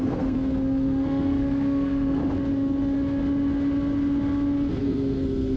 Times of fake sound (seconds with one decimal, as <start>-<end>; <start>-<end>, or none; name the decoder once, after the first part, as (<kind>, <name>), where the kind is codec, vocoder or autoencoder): 0.0-2.2 (codec, SNAC); 4.8-5.6